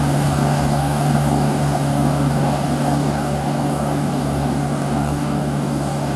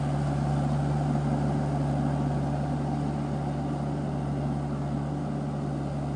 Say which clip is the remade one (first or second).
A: first